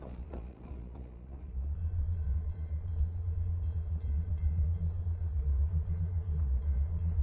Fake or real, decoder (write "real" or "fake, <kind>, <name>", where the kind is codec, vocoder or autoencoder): fake, vocoder, Vocos